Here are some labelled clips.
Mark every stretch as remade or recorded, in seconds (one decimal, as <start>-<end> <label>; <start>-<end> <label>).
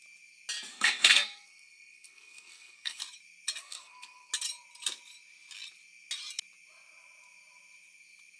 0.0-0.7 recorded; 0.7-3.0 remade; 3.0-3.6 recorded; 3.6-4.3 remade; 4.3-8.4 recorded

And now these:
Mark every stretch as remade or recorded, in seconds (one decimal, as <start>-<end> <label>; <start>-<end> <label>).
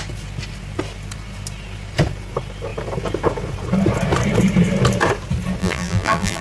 0.0-5.6 recorded; 5.6-6.4 remade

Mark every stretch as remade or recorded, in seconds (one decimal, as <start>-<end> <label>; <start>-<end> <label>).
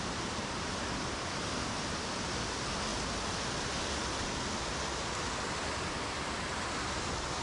0.0-7.4 recorded